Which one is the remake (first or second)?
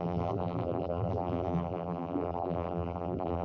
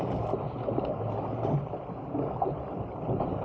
first